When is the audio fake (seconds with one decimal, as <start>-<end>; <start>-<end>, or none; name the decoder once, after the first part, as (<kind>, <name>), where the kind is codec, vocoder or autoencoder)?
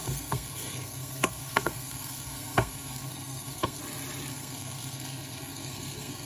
0.0-3.8 (codec, SNAC); 4.3-6.3